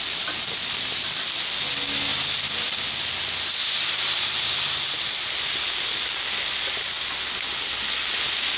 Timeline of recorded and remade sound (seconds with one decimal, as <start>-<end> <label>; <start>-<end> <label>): 0.0-8.6 recorded